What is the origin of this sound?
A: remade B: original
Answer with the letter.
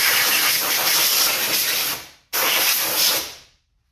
A